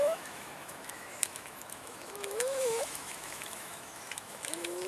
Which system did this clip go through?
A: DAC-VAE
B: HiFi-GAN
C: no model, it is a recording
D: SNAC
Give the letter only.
A